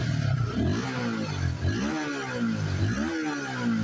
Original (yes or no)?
yes